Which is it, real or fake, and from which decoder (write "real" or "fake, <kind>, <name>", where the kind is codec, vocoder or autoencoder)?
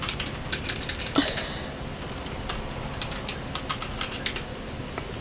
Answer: real